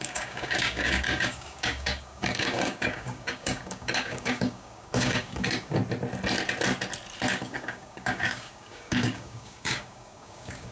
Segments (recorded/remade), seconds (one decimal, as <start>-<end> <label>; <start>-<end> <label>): 0.0-5.8 remade; 5.8-7.3 recorded; 7.3-10.7 remade